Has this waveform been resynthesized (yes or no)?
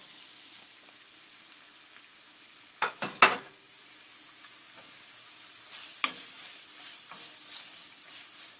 no